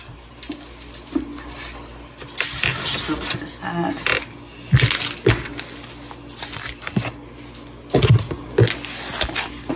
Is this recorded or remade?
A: recorded